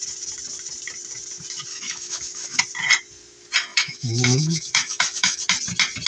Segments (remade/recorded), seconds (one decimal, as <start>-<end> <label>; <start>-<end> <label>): 0.0-1.7 recorded; 1.7-2.6 remade; 2.6-3.7 recorded; 3.7-5.4 remade; 5.4-6.1 recorded